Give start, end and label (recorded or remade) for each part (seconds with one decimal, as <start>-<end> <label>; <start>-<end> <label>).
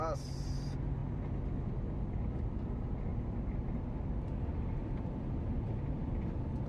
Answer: 0.0-6.7 recorded